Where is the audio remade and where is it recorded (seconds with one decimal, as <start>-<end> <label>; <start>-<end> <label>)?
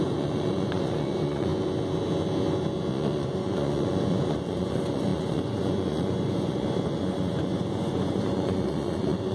0.0-1.5 remade; 1.5-2.9 recorded; 2.9-9.3 remade